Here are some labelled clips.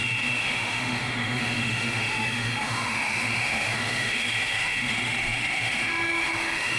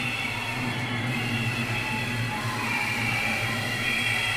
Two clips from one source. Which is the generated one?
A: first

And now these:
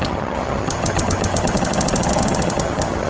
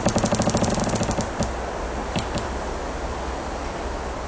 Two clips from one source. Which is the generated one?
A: first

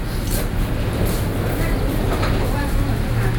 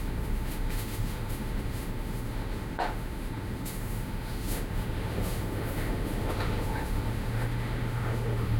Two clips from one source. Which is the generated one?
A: second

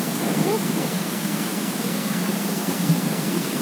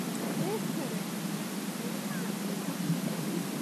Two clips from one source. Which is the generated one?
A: first